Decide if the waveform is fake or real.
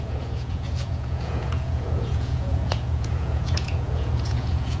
fake